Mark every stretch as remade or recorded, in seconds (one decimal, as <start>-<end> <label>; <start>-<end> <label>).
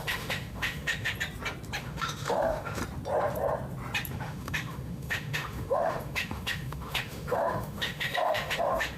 0.0-1.1 remade; 1.1-1.8 recorded; 1.8-2.8 remade; 2.8-4.1 recorded; 4.1-9.0 remade